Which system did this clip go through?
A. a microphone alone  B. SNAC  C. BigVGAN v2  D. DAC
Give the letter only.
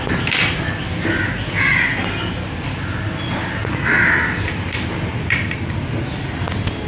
A